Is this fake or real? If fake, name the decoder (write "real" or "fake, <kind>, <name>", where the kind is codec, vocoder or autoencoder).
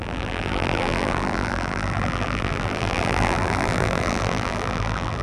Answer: fake, vocoder, BigVGAN v2